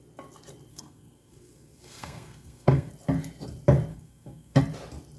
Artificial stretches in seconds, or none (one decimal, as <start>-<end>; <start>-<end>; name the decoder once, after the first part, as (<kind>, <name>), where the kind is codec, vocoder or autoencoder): 0.7-2.9 (codec, SNAC); 3.9-4.6